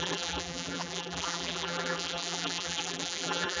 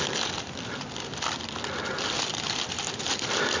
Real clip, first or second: second